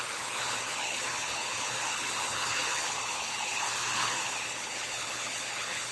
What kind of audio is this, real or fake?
fake